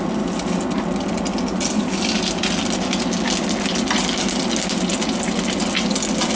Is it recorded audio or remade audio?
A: recorded